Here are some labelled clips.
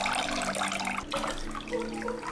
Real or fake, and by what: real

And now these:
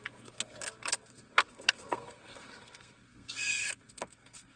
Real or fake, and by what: fake, codec, SNAC